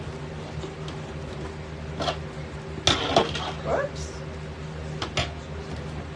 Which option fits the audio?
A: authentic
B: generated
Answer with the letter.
A